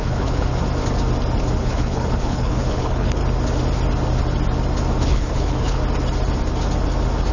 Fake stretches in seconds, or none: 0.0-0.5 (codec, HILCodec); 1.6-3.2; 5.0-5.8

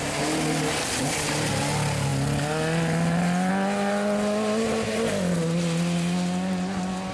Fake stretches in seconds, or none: none

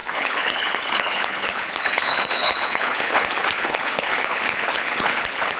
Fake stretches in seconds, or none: 0.0-5.6 (codec, HILCodec)